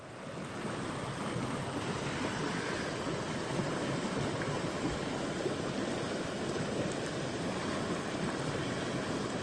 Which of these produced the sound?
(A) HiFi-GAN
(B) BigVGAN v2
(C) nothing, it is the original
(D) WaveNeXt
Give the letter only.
C